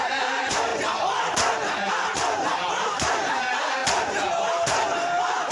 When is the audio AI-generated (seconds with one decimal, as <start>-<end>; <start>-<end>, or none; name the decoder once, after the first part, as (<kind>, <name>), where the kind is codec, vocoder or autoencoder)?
0.0-0.7 (vocoder, BigVGAN v2); 1.9-3.8; 4.5-5.5